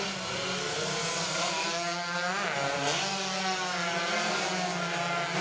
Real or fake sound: real